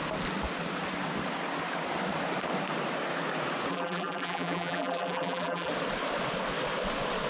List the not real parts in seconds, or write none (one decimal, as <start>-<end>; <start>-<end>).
3.7-5.7